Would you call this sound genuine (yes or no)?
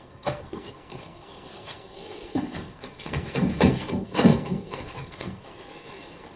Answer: no